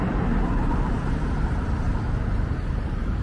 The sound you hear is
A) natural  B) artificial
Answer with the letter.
B